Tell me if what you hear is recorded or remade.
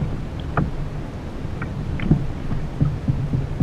recorded